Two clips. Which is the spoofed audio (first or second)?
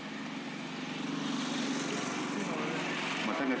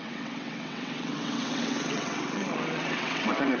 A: second